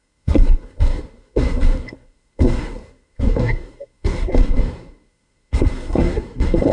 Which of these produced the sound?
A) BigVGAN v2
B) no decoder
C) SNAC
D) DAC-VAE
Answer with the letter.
C